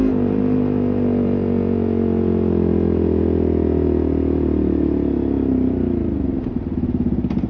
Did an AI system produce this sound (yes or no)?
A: no